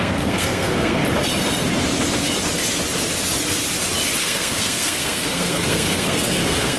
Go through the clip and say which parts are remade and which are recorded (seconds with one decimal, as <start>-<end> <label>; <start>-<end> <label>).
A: 0.0-1.0 remade; 1.0-4.2 recorded; 4.2-6.8 remade